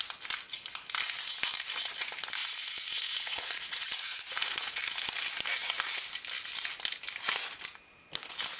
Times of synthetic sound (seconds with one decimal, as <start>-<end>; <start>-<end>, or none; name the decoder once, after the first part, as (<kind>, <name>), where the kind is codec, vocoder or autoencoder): 2.4-4.8 (vocoder, Vocos)

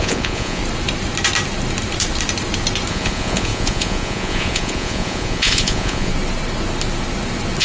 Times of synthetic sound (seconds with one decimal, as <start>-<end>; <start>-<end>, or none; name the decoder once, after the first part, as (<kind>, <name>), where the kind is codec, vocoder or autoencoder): 0.0-0.6 (vocoder, Vocos); 2.9-6.1

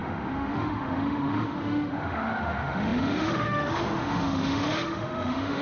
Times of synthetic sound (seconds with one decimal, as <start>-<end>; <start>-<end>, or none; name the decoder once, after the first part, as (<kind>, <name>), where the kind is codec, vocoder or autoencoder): 0.0-5.6 (autoencoder, DAC-VAE)

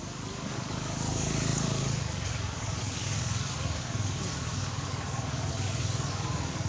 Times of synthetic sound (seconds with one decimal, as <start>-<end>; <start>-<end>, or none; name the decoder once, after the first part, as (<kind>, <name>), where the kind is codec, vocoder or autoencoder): 0.0-6.7 (codec, DAC)

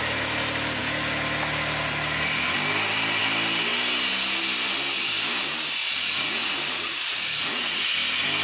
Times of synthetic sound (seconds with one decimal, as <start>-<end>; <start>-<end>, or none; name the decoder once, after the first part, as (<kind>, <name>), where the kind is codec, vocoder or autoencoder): 5.8-7.8 (vocoder, Vocos)

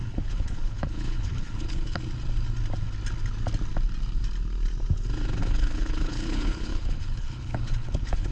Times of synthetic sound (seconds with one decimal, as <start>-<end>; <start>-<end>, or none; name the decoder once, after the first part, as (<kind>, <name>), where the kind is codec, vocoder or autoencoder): 0.0-2.0 (codec, HILCodec); 5.4-8.3

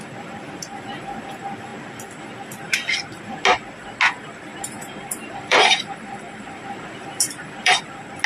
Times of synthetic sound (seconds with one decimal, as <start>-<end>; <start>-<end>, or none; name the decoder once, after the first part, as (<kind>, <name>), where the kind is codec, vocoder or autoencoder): 4.5-7.8 (vocoder, BigVGAN v2)